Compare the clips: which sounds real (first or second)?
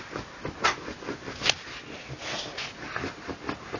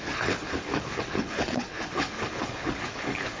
first